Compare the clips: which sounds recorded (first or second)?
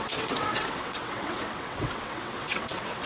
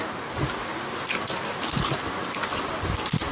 second